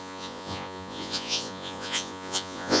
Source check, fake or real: fake